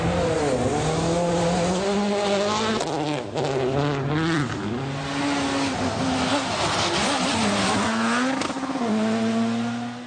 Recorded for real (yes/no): yes